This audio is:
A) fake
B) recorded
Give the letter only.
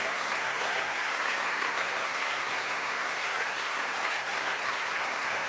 A